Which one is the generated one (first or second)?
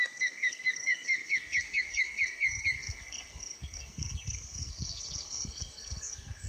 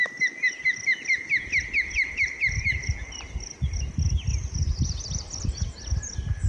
first